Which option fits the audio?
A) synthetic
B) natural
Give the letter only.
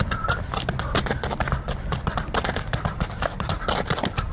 B